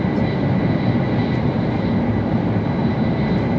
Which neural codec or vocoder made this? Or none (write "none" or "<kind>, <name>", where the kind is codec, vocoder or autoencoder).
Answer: none